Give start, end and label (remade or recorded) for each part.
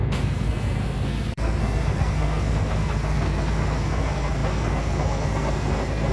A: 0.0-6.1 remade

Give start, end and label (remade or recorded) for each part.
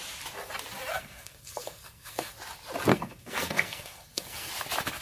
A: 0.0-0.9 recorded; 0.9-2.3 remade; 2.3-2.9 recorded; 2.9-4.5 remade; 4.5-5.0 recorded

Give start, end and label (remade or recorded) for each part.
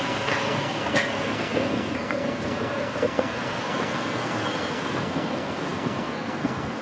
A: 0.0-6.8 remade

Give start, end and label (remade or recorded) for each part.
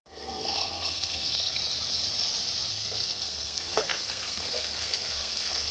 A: 0.0-1.6 remade; 1.6-2.7 recorded; 2.7-5.7 remade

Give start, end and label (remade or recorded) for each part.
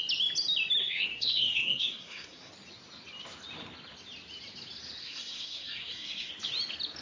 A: 0.0-0.8 recorded; 0.8-2.5 remade; 2.5-5.0 recorded; 5.0-6.3 remade; 6.3-7.0 recorded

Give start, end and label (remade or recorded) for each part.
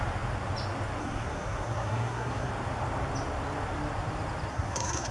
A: 0.0-1.0 recorded; 1.0-2.5 remade; 2.5-4.5 recorded; 4.5-5.1 remade